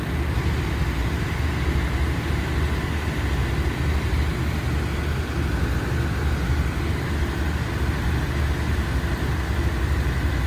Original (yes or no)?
yes